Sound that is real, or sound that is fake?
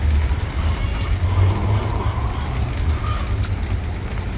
real